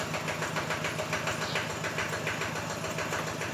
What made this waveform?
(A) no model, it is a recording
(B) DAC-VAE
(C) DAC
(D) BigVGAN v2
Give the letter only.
A